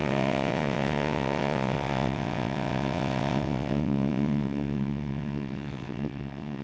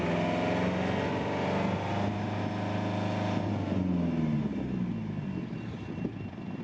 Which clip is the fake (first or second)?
first